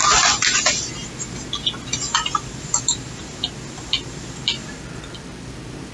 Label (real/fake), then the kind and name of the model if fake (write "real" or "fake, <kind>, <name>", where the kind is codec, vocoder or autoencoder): real